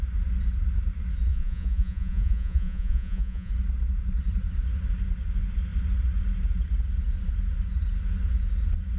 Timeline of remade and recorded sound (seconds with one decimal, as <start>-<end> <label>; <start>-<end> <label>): 0.0-1.3 recorded; 1.3-3.5 remade; 3.5-9.0 recorded